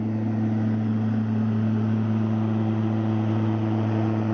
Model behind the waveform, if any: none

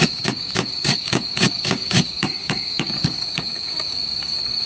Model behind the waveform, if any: codec, DAC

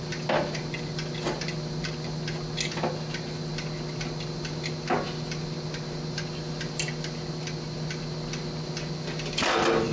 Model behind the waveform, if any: none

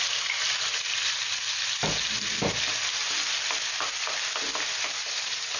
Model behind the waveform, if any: none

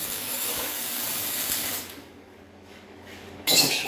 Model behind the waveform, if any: codec, DAC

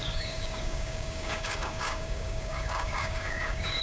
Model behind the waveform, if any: codec, DAC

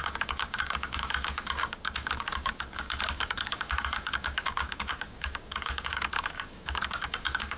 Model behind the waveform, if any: codec, DAC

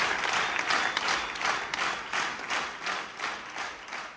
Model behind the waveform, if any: none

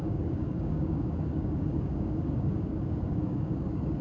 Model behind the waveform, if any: codec, DAC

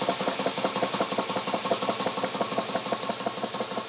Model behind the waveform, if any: none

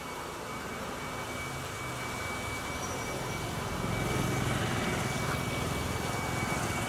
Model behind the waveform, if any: none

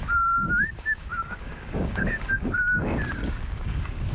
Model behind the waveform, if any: codec, DAC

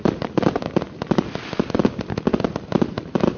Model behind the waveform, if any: none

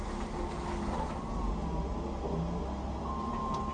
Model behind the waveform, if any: none